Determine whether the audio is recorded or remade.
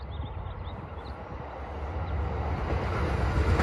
recorded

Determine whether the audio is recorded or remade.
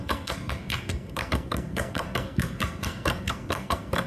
remade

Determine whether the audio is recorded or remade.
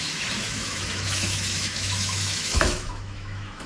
remade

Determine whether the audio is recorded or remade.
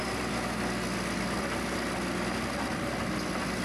recorded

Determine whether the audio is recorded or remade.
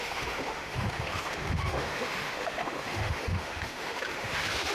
remade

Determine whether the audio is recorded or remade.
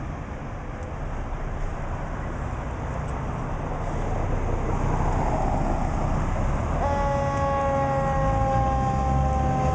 recorded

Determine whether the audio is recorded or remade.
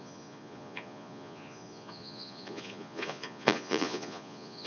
remade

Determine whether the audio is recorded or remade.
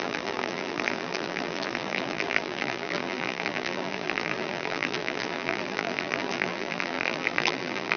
remade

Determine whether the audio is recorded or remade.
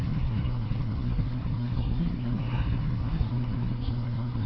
remade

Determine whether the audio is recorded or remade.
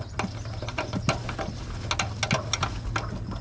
recorded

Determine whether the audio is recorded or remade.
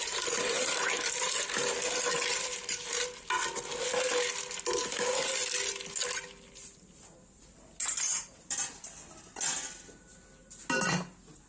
recorded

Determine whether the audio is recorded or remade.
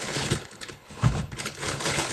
remade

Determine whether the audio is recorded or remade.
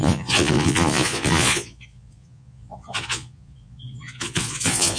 remade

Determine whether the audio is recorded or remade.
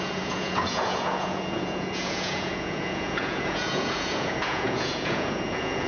remade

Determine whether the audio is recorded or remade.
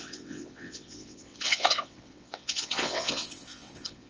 remade